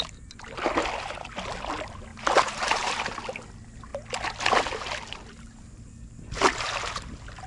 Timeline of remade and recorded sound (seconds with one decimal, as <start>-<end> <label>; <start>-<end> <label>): 0.0-2.1 recorded; 2.1-3.2 remade; 3.2-7.5 recorded